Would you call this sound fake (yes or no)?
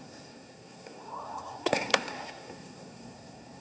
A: yes